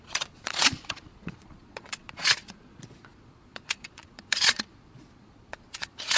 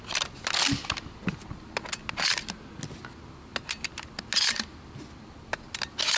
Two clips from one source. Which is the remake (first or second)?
first